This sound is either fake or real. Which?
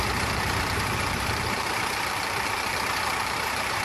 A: fake